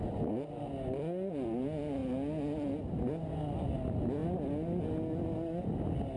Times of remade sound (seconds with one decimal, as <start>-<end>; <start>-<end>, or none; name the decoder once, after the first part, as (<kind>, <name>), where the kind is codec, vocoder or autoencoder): none